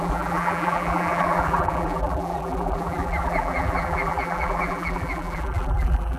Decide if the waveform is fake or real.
fake